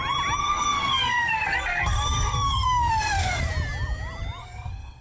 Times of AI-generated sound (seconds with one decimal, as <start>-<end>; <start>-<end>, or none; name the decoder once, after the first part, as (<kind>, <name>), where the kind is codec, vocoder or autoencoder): 0.4-3.4 (codec, SNAC); 4.4-5.0